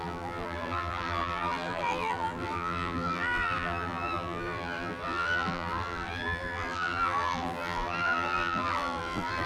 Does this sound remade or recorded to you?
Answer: remade